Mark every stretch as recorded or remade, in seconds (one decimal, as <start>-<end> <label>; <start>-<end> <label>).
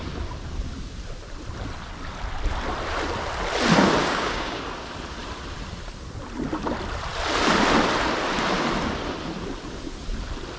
0.0-4.0 recorded; 4.0-4.6 remade; 4.6-10.6 recorded